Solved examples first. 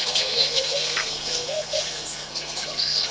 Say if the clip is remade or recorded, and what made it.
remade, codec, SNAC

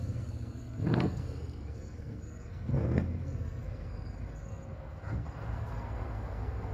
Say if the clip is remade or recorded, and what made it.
remade, codec, SNAC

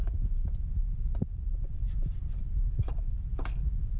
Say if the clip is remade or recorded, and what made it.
recorded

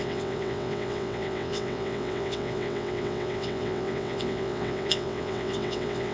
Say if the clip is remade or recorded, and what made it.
remade, vocoder, WaveNeXt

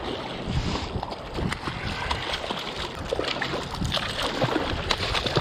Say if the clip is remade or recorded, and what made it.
recorded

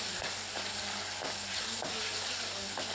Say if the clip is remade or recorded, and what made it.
recorded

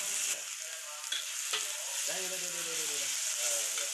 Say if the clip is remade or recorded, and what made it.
recorded